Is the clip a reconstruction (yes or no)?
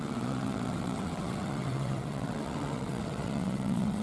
yes